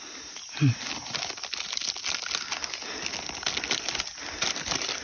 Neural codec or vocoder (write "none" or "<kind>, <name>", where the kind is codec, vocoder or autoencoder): none